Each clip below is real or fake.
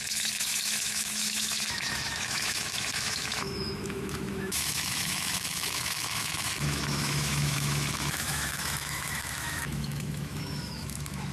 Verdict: fake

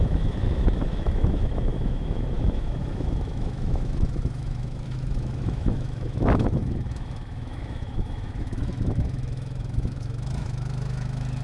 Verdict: fake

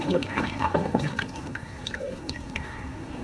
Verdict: fake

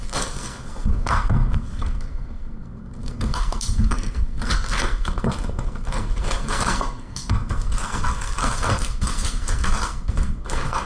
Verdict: fake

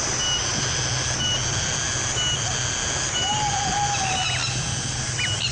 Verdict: real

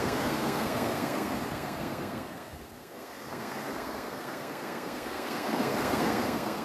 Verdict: fake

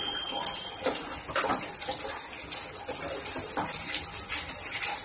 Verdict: real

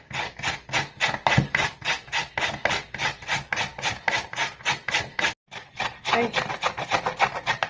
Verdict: real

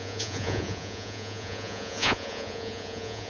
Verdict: fake